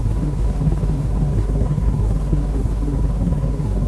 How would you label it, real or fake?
fake